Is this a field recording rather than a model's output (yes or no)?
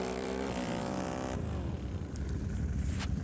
no